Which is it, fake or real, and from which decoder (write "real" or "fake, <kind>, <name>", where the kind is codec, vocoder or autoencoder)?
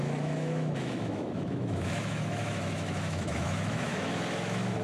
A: fake, autoencoder, DAC-VAE